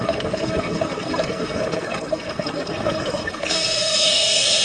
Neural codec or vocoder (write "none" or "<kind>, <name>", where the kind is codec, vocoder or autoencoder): codec, SNAC